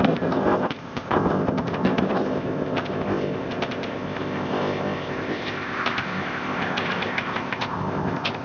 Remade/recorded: remade